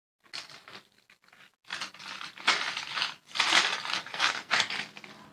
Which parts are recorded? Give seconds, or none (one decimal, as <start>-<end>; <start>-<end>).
0.0-3.9; 4.6-5.3